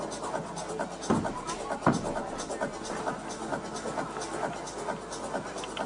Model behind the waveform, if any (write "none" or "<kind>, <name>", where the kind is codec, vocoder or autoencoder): none